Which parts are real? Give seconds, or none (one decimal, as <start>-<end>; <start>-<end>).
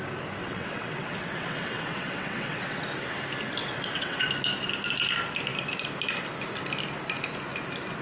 0.0-0.4; 2.8-3.6; 4.3-8.0